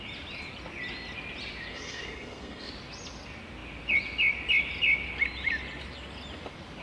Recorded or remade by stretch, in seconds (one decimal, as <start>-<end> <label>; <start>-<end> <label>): 0.0-1.7 recorded; 1.7-2.7 remade; 2.7-6.8 recorded